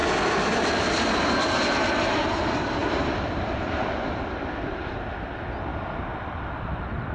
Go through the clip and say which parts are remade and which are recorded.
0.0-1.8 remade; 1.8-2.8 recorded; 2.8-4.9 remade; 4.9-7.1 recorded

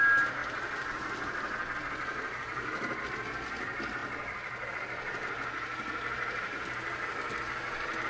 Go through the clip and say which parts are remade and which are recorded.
0.0-8.1 recorded

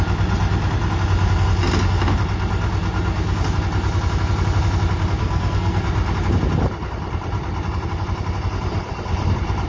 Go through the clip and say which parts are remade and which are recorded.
0.0-5.2 recorded; 5.2-5.8 remade; 5.8-9.7 recorded